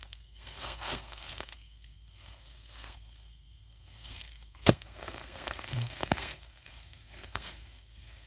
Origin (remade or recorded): remade